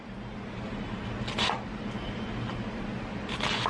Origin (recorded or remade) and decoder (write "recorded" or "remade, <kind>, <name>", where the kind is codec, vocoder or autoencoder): recorded